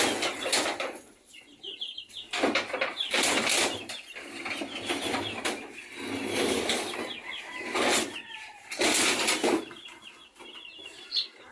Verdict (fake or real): real